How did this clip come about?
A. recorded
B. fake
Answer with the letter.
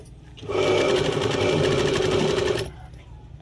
A